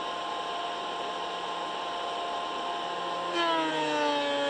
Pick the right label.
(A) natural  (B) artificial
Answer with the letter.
A